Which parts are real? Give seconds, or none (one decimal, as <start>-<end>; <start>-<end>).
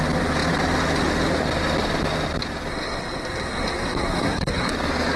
0.0-2.7; 4.7-5.2